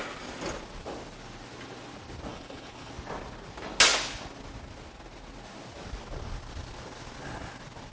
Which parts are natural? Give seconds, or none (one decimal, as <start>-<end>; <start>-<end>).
0.0-2.3; 2.9-7.9